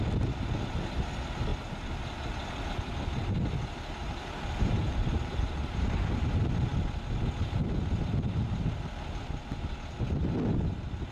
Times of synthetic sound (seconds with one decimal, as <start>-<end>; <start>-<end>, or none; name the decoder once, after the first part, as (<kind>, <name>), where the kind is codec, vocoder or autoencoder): 1.5-2.6 (vocoder, BigVGAN v2); 4.0-6.3